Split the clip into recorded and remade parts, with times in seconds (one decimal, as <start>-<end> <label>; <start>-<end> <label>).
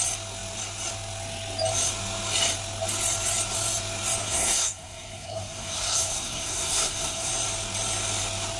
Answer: 0.0-4.2 recorded; 4.2-7.3 remade; 7.3-8.6 recorded